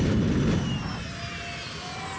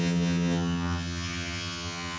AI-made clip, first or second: second